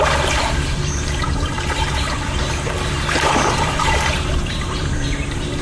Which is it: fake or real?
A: fake